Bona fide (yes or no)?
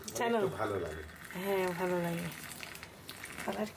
yes